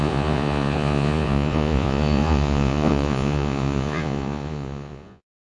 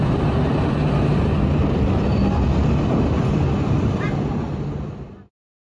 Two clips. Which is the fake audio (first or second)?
first